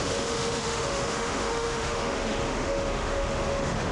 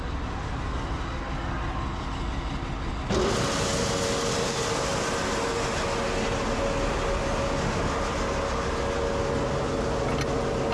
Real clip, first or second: second